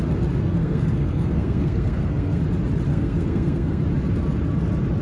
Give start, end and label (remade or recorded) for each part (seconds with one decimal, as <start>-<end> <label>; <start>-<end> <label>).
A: 0.0-0.4 recorded; 0.4-2.4 remade; 2.4-2.9 recorded; 2.9-3.8 remade; 3.8-5.0 recorded

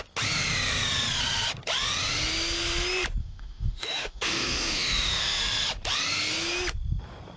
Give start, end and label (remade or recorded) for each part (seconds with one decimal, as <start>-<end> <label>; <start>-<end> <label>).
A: 0.0-3.2 recorded; 3.2-5.4 remade; 5.4-7.4 recorded

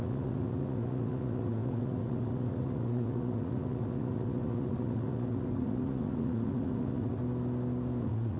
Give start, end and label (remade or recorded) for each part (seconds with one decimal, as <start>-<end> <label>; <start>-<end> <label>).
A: 0.0-7.2 remade; 7.2-8.0 recorded; 8.0-8.4 remade

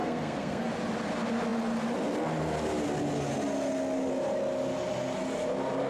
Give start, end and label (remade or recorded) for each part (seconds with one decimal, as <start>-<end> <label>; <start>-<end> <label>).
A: 0.0-0.7 remade; 0.7-5.9 recorded